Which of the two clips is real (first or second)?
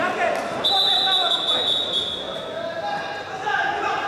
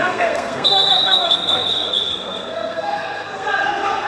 first